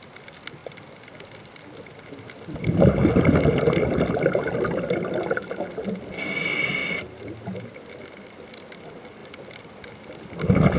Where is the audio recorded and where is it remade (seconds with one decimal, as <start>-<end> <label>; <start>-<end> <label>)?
0.0-10.8 recorded